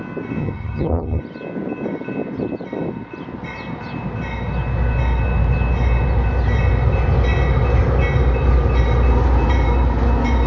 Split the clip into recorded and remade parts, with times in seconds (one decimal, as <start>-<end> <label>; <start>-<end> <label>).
0.0-0.4 recorded; 0.4-1.2 remade; 1.2-10.5 recorded